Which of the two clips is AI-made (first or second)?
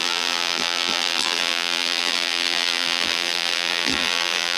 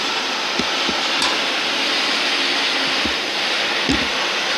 first